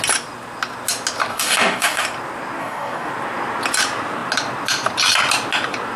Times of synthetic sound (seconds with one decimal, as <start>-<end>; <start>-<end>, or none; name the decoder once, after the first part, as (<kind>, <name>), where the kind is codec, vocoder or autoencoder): 1.3-2.0 (codec, DAC); 2.6-3.1